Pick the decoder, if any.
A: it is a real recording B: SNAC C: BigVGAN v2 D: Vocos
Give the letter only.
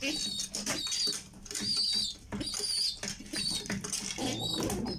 A